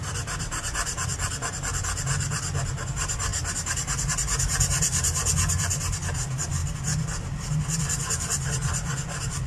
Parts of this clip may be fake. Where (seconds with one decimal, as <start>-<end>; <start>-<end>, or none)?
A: none